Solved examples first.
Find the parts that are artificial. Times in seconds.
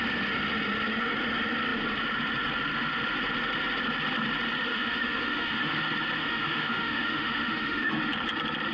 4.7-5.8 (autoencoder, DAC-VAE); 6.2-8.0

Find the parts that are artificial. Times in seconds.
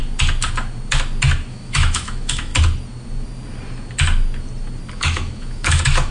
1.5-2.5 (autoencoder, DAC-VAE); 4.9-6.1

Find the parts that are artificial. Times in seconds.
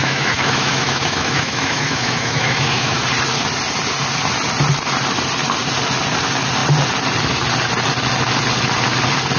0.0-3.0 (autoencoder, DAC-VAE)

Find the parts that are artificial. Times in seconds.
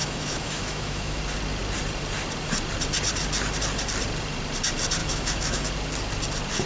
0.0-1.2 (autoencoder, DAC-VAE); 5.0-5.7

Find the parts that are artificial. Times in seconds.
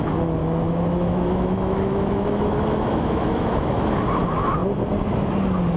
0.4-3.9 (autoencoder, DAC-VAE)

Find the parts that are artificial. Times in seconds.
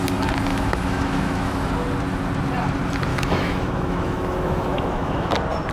0.5-1.7 (autoencoder, DAC-VAE); 3.1-5.3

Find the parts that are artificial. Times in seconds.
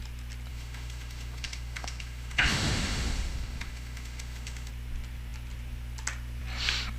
0.5-4.7 (autoencoder, DAC-VAE)